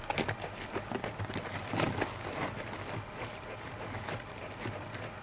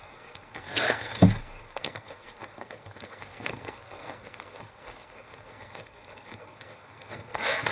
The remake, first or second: second